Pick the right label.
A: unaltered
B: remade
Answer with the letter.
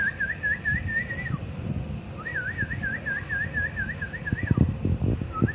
A